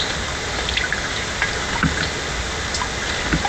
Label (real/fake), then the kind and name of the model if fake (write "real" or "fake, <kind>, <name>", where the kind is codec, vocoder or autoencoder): real